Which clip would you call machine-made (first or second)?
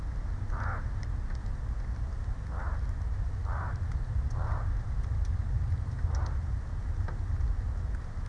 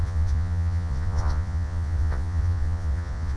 second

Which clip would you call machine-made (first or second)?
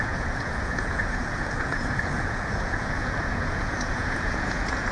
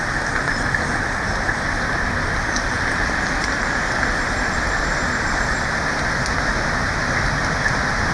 first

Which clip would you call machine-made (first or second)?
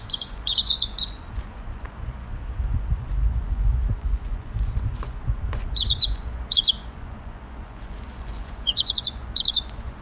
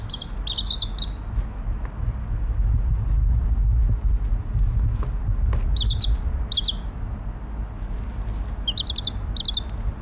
first